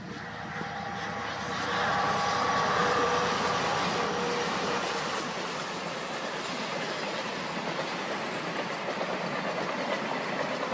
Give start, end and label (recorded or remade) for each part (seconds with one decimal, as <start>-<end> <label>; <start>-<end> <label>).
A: 0.0-2.8 recorded; 2.8-3.6 remade; 3.6-10.7 recorded